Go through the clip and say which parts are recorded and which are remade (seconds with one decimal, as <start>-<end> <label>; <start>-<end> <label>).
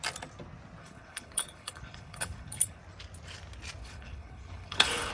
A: 0.0-0.8 recorded; 0.8-2.8 remade; 2.8-3.8 recorded; 3.8-5.1 remade